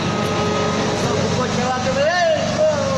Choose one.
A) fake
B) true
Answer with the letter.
B